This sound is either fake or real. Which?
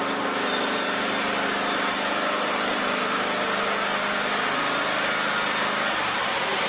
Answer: real